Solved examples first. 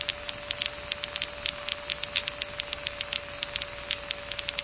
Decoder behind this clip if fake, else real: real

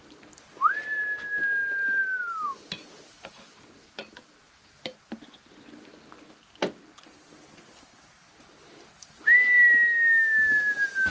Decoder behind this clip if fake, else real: real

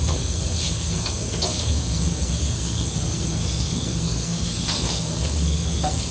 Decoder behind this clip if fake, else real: fake, codec, SNAC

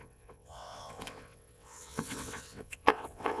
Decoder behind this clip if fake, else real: fake, vocoder, WaveNeXt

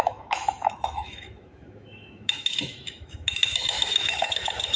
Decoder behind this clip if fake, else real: fake, autoencoder, DAC-VAE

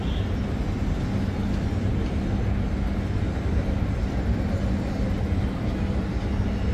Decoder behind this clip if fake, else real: real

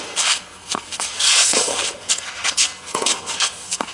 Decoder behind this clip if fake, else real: fake, codec, SNAC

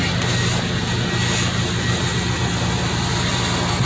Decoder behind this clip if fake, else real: real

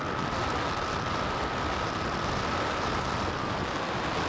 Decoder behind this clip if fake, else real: real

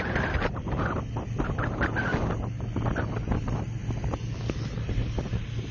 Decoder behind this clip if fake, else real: real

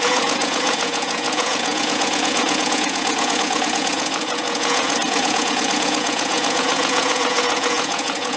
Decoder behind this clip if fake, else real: fake, vocoder, Vocos